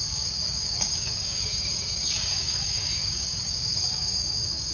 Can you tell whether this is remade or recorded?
remade